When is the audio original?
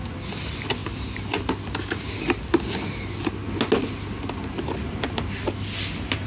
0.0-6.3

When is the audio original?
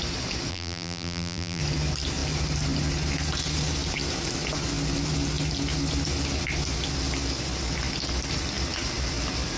0.0-0.5; 1.6-9.6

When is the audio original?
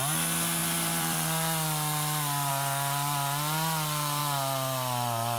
0.0-0.6; 2.5-5.4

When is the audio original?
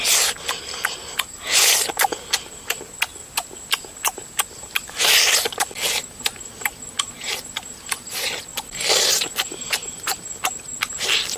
0.0-11.4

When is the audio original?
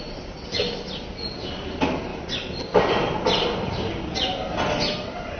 0.0-5.4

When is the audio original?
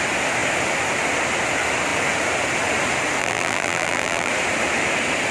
0.0-3.2; 4.3-5.3